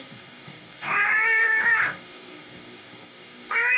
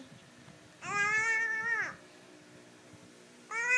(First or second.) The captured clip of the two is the second